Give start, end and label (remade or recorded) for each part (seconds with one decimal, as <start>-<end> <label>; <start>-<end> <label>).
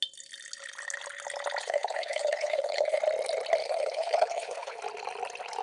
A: 0.0-1.6 recorded; 1.6-3.0 remade; 3.0-3.6 recorded; 3.6-4.8 remade; 4.8-5.6 recorded